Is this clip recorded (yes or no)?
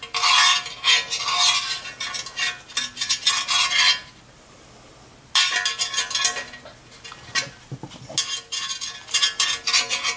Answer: yes